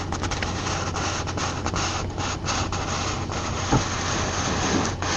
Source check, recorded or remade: recorded